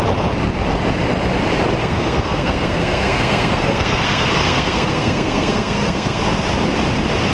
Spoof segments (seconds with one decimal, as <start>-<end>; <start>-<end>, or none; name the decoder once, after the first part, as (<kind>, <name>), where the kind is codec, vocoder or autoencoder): 1.8-6.2 (codec, SNAC)